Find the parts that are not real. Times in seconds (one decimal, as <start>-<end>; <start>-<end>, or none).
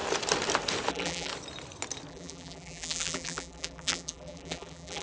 0.9-1.3; 2.1-5.0